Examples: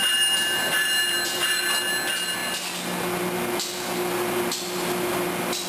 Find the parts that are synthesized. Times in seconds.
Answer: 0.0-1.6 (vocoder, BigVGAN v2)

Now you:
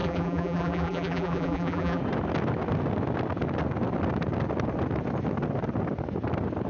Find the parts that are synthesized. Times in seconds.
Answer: 0.0-2.0 (vocoder, BigVGAN v2)